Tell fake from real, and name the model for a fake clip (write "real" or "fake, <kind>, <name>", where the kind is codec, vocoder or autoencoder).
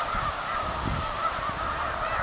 real